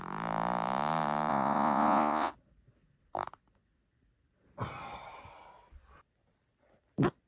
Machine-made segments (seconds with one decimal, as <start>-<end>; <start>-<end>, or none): 1.3-2.3